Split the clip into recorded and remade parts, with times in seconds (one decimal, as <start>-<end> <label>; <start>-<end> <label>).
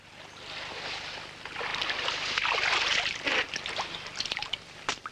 0.0-5.1 recorded